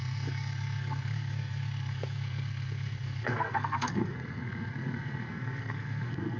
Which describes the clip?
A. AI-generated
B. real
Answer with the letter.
A